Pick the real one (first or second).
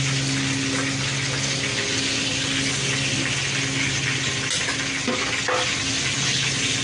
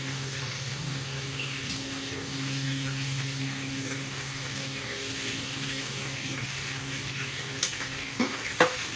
first